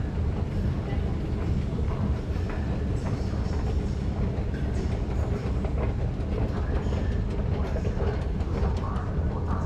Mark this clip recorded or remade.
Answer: recorded